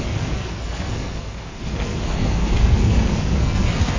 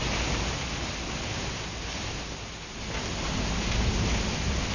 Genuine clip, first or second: second